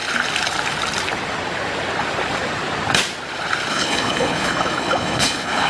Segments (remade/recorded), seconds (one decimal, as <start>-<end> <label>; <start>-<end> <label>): 0.0-3.7 recorded; 3.7-5.7 remade